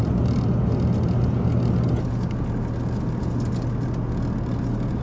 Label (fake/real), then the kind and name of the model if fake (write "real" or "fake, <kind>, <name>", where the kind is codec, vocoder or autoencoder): real